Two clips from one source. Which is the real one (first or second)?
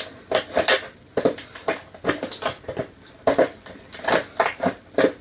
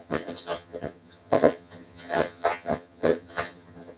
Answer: first